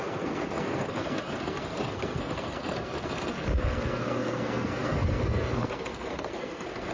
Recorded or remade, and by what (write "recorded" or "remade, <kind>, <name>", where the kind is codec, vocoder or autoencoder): remade, codec, SNAC